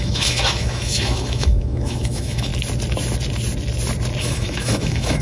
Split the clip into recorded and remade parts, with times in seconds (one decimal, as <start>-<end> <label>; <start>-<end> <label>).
0.0-2.5 remade; 2.5-4.2 recorded; 4.2-5.2 remade